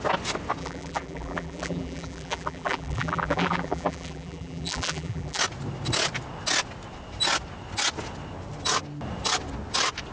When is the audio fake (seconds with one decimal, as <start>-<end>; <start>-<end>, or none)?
0.6-5.4